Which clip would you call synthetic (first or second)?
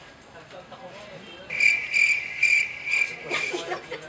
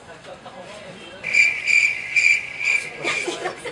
second